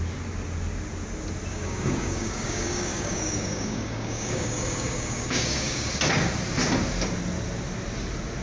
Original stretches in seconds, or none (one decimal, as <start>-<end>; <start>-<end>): 0.0-1.5; 5.9-8.4